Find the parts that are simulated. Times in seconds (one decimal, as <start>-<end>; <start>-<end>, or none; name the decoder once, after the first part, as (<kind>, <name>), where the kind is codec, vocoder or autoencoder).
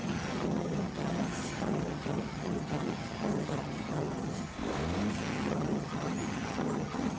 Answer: 0.0-4.5 (vocoder, HiFi-GAN); 5.1-7.2